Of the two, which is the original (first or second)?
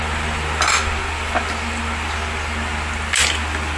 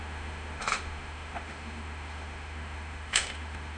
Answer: first